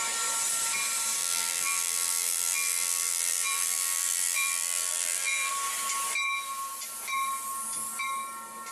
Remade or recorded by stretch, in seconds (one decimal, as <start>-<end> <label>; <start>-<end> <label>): 0.0-1.2 recorded; 1.2-5.5 remade; 5.5-8.7 recorded